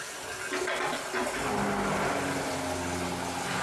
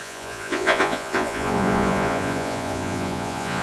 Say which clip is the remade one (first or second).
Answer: second